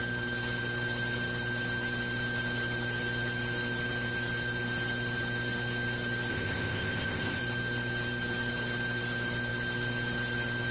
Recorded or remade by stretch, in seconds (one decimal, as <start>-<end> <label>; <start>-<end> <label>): 0.0-6.3 recorded; 6.3-7.4 remade; 7.4-10.7 recorded